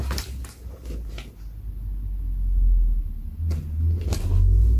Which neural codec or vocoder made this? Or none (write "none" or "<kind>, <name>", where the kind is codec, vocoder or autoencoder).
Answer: none